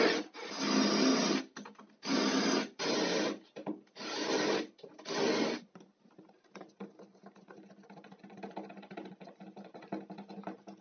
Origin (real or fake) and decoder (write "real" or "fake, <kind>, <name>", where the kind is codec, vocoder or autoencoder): real